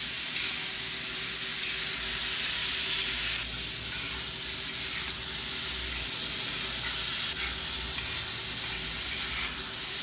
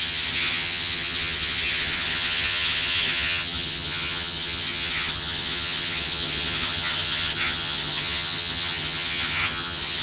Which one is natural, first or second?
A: first